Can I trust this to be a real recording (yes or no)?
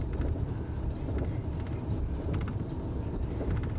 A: yes